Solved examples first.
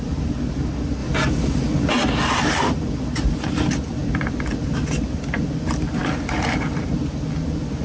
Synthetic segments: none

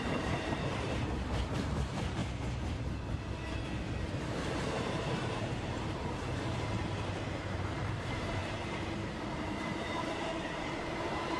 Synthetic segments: 0.0-2.2; 4.1-11.4

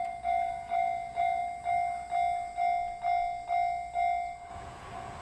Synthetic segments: 0.0-1.4; 4.5-5.2